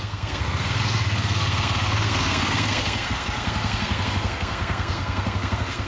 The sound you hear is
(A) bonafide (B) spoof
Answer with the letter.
B